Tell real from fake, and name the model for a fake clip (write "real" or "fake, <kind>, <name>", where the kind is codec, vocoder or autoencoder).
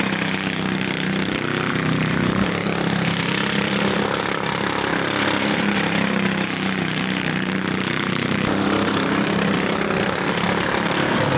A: fake, vocoder, BigVGAN v2